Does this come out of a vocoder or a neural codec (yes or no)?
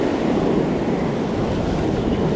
no